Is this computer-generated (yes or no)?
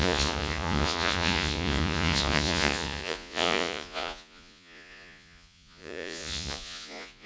yes